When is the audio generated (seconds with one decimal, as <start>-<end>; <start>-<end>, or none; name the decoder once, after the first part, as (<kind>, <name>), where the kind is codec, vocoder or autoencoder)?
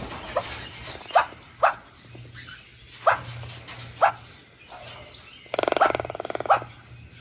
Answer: none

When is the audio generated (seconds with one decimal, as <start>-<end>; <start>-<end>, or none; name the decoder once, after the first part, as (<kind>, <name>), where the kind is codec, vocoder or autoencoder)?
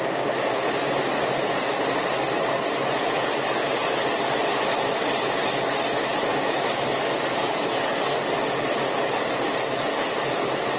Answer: none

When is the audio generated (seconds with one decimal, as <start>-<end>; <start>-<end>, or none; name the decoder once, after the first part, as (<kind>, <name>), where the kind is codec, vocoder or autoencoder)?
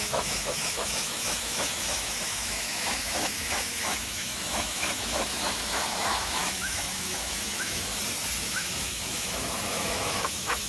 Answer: 0.0-7.9 (autoencoder, DAC-VAE); 8.4-10.7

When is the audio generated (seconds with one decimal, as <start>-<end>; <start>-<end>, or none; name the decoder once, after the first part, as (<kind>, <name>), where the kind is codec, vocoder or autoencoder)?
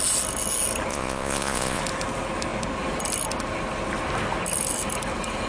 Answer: 0.9-1.8 (vocoder, Vocos)